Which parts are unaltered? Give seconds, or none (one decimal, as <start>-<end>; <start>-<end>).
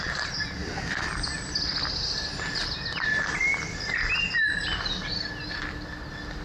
0.0-6.4